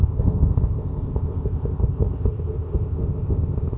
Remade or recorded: remade